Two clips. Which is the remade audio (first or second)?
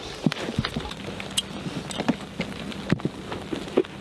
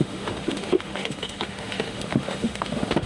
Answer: second